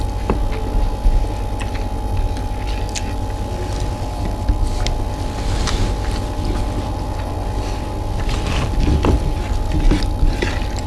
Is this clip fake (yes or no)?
no